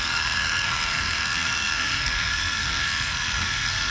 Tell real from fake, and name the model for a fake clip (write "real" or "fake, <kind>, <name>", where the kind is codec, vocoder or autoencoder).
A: fake, codec, SNAC